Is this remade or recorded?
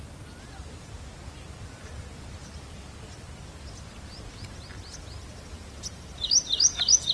recorded